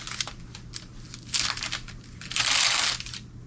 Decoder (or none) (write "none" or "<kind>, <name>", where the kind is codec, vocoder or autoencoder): none